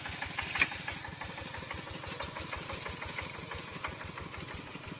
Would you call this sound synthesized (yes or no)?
no